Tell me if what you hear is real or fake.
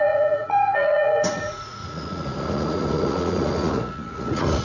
fake